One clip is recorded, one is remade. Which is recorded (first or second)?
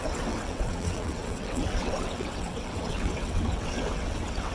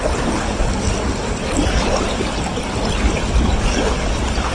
second